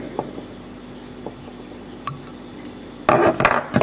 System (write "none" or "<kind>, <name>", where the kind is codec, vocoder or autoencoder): none